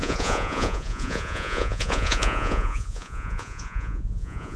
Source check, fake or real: fake